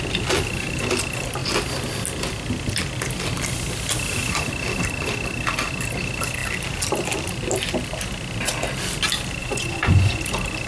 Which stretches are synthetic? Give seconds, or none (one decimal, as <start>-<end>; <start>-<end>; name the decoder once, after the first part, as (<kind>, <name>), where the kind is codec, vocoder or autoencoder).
9.4-10.2 (vocoder, Vocos)